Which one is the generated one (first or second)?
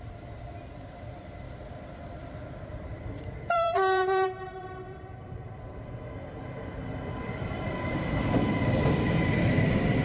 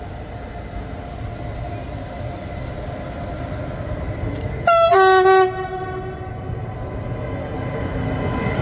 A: first